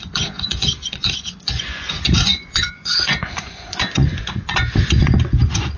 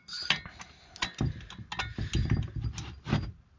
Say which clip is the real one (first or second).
second